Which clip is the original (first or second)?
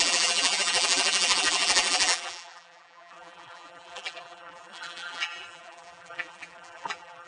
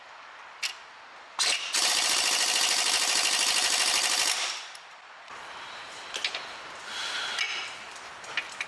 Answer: second